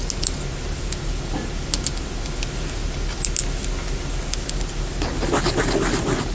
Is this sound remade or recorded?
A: recorded